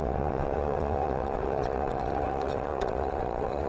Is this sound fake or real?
fake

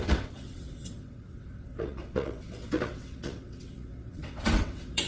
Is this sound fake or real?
fake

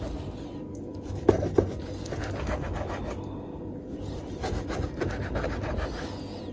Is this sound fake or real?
real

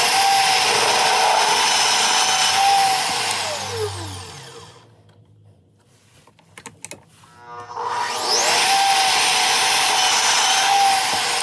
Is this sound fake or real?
real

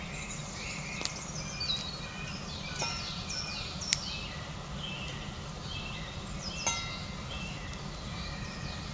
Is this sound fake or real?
real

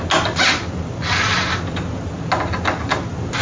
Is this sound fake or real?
real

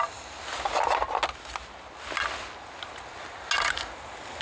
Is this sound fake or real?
real